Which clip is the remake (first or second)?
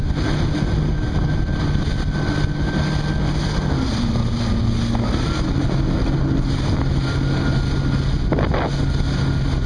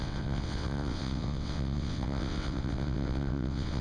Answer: second